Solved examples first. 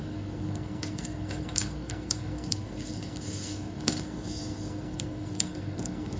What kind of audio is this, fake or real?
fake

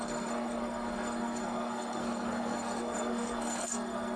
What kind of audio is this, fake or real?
fake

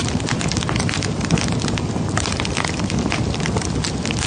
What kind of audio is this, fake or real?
real